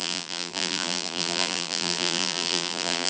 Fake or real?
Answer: fake